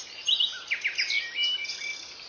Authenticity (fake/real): real